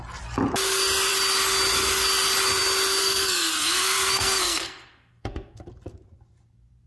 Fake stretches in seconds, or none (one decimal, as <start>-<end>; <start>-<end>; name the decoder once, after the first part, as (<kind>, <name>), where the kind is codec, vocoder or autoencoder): 3.0-5.7 (codec, SNAC)